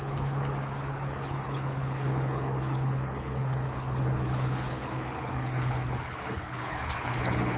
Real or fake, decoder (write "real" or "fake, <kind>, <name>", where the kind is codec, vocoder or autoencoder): fake, codec, HILCodec